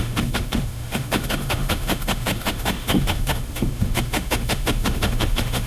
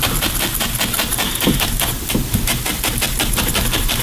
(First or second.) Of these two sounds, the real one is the second